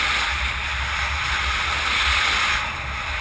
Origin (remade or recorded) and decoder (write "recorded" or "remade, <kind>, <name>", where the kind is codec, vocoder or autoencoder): recorded